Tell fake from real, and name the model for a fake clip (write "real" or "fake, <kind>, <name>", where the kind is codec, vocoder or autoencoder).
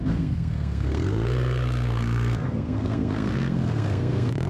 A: fake, codec, SNAC